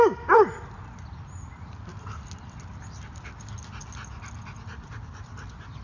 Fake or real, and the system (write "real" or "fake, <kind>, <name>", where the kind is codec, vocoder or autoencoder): real